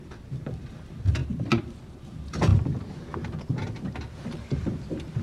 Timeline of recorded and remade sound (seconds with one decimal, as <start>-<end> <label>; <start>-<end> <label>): 0.0-2.5 remade; 2.5-4.4 recorded; 4.4-5.2 remade

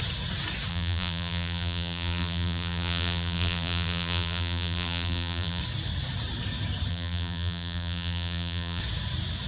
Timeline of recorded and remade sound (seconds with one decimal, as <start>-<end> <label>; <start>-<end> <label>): 0.0-0.7 recorded; 0.7-5.6 remade; 5.6-6.9 recorded; 6.9-8.8 remade; 8.8-9.5 recorded